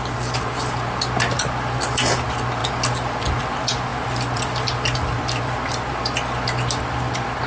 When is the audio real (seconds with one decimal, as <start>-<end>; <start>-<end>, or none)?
0.0-3.9; 5.7-7.5